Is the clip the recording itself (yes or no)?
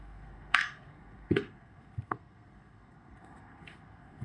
no